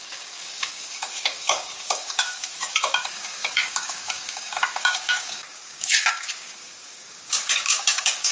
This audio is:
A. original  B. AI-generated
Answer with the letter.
B